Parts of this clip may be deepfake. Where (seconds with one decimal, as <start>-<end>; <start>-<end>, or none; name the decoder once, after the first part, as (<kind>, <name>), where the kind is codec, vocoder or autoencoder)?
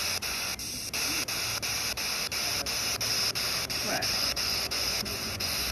0.0-0.5 (vocoder, Vocos); 3.9-5.7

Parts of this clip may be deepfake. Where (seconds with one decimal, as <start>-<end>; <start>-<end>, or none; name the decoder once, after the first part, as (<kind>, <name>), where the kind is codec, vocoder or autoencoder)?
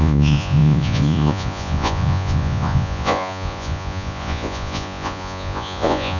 0.0-6.2 (vocoder, Vocos)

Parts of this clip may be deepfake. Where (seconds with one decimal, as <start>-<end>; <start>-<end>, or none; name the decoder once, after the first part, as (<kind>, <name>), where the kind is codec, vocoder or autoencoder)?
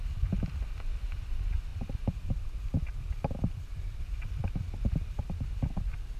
none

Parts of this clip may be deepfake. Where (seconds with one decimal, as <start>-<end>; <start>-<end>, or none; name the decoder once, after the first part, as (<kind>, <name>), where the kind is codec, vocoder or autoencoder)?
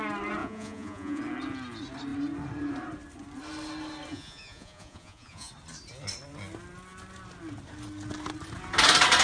0.4-1.2 (vocoder, Vocos); 4.1-5.5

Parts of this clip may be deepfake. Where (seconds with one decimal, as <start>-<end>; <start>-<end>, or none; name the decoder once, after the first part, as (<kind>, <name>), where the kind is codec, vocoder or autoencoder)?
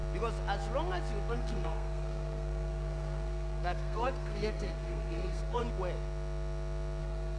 1.3-5.6 (codec, SNAC); 7.0-7.4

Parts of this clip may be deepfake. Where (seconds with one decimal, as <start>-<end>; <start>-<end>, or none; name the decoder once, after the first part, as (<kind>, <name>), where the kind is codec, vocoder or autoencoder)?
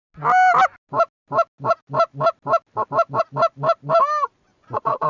4.5-5.1 (vocoder, Vocos)